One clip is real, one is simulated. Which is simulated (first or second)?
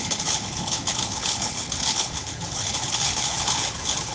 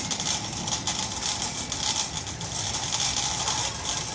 first